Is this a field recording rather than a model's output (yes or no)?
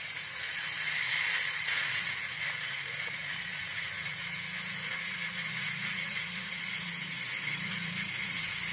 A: no